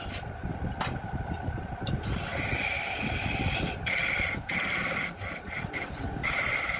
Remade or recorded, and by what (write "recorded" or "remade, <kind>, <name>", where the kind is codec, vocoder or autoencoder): recorded